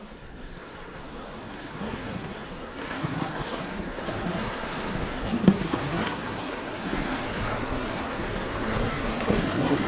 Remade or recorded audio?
remade